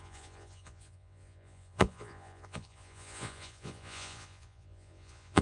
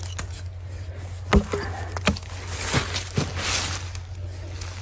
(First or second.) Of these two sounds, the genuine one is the second